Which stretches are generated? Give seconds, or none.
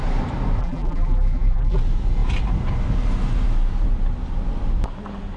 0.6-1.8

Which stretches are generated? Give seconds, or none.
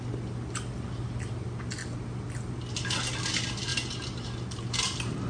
none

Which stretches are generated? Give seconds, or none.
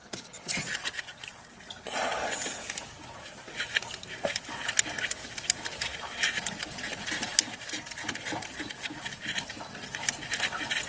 none